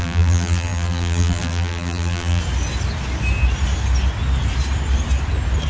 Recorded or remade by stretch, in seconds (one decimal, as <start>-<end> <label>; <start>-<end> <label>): 0.0-2.4 remade; 2.4-5.7 recorded